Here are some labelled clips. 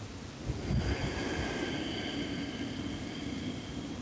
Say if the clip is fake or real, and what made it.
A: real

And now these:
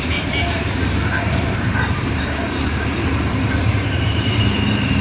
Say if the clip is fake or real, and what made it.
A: fake, vocoder, BigVGAN v2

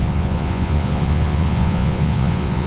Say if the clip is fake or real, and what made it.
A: fake, vocoder, Vocos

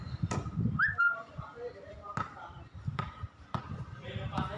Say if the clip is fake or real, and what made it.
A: real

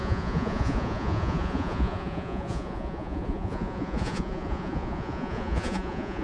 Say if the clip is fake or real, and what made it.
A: fake, vocoder, Vocos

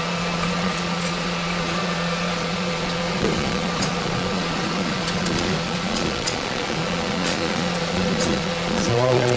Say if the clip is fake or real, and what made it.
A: fake, vocoder, Vocos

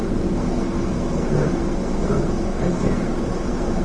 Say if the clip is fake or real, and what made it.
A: fake, codec, SNAC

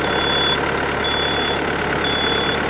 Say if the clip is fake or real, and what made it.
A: real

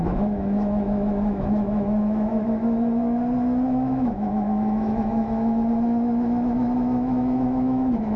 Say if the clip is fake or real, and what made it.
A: fake, autoencoder, DAC-VAE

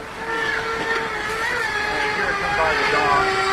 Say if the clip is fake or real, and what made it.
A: real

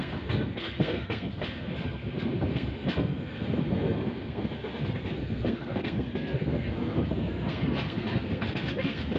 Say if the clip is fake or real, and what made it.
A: fake, codec, SNAC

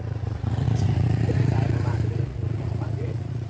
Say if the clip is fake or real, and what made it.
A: fake, vocoder, Vocos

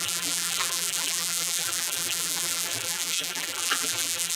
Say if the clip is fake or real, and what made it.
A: fake, vocoder, BigVGAN v2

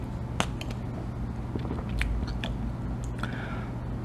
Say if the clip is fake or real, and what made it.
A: real